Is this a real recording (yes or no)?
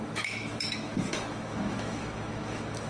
no